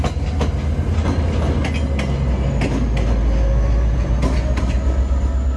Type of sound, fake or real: real